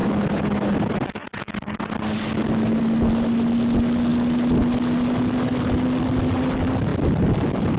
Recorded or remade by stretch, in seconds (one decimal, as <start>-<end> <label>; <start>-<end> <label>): 0.0-7.8 recorded